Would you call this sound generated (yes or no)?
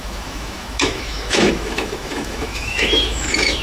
yes